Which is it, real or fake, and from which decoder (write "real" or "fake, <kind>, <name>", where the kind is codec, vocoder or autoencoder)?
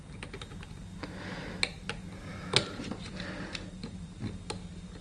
real